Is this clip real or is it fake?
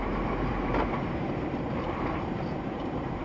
fake